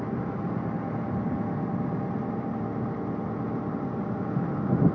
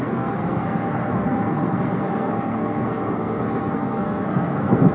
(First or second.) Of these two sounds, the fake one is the second